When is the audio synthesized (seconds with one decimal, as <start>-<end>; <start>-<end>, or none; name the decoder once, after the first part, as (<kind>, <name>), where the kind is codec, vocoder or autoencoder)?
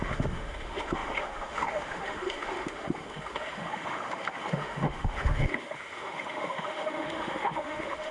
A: 0.0-8.1 (autoencoder, DAC-VAE)